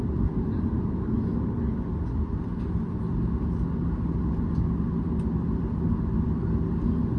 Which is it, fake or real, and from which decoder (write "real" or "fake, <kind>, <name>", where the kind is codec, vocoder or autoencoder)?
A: real